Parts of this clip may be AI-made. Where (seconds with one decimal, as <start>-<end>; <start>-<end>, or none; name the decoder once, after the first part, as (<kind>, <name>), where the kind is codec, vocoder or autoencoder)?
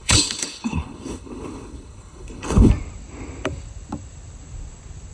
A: 0.0-2.7 (codec, HILCodec)